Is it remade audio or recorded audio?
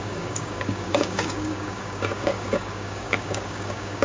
remade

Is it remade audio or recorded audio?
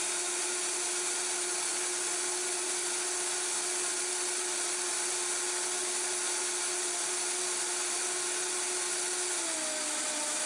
recorded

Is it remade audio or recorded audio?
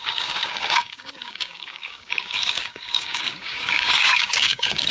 remade